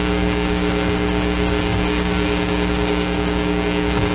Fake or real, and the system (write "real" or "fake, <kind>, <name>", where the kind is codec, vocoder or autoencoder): fake, codec, DAC